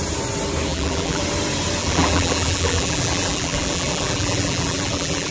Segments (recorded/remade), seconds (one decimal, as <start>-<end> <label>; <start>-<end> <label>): 0.0-0.7 recorded; 0.7-1.2 remade; 1.2-1.8 recorded; 1.8-5.3 remade